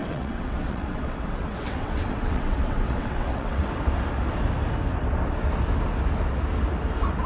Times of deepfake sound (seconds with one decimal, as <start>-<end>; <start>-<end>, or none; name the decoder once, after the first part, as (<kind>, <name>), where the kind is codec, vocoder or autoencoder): 0.0-3.6 (vocoder, WaveNeXt)